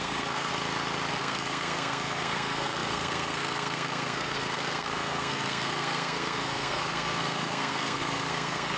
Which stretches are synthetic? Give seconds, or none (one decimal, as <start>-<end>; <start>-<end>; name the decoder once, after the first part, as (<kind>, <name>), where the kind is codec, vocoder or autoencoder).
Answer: 0.0-0.5 (codec, SNAC); 1.1-8.8